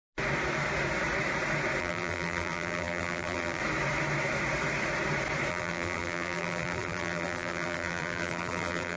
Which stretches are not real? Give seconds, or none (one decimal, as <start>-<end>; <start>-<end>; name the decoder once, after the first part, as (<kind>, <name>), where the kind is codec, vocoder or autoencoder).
1.8-3.6 (vocoder, BigVGAN v2); 5.5-9.0